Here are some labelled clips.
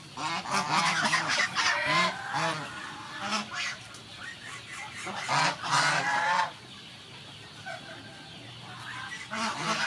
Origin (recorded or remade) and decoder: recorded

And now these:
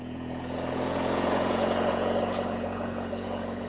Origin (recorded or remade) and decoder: remade, vocoder, Vocos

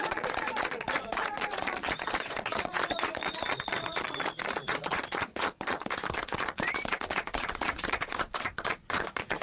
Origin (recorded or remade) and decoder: remade, vocoder, Vocos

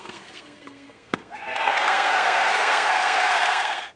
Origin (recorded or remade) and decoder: remade, codec, SNAC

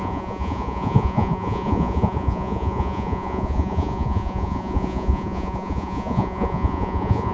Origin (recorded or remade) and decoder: remade, vocoder, Vocos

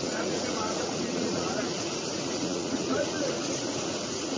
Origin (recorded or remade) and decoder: remade, vocoder, Vocos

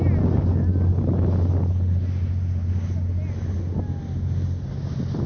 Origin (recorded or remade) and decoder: recorded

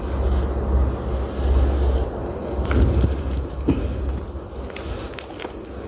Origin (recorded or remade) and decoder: recorded